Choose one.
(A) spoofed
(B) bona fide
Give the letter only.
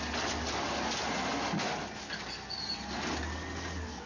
B